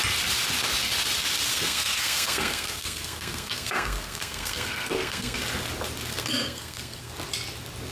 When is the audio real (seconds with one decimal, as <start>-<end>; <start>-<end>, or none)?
0.0-1.5; 5.4-6.1; 7.1-7.9